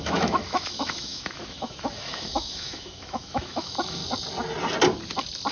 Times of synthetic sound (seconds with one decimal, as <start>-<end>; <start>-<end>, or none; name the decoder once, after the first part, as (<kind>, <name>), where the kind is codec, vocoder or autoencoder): 0.0-4.0 (autoencoder, DAC-VAE)